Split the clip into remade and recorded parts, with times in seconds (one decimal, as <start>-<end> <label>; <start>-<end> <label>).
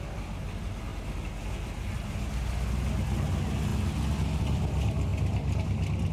0.0-6.1 recorded